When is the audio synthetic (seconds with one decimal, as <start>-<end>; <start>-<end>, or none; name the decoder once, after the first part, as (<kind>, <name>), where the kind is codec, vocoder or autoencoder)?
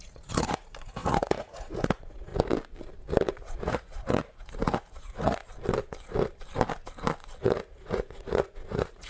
0.0-2.3 (vocoder, Vocos); 3.3-5.5; 7.4-9.1